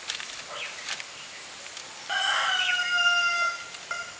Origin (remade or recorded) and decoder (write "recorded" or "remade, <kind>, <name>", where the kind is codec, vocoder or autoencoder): recorded